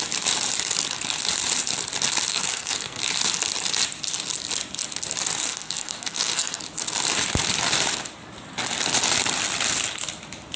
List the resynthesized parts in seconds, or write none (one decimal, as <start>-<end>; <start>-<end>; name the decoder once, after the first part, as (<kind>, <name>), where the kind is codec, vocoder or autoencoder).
2.3-3.0 (codec, SNAC); 5.4-6.6